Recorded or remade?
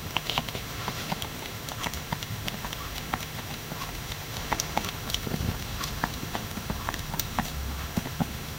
remade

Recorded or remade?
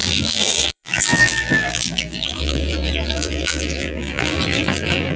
remade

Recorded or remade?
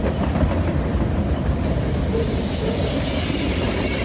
recorded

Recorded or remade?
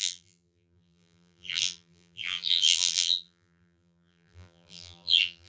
remade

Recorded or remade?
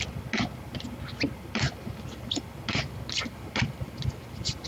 recorded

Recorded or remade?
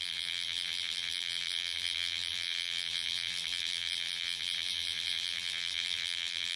remade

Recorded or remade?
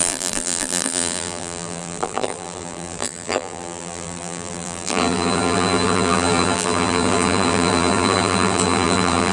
remade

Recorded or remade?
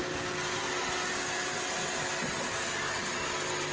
recorded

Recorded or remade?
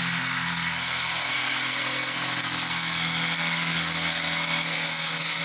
remade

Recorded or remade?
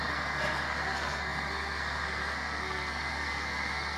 remade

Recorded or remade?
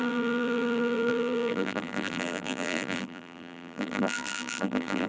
remade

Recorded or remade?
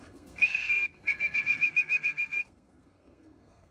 remade